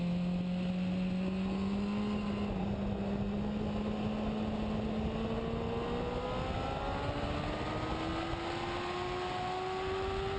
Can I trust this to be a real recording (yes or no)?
yes